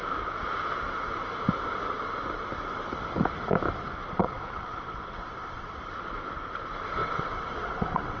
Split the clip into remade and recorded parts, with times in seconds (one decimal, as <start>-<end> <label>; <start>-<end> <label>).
0.0-4.2 recorded; 4.2-5.8 remade; 5.8-7.0 recorded; 7.0-8.2 remade